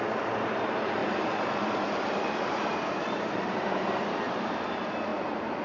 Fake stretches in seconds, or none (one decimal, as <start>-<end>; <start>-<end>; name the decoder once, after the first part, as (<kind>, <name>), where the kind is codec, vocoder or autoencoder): 1.0-4.2 (vocoder, BigVGAN v2); 5.1-5.6